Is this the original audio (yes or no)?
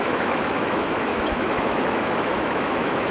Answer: no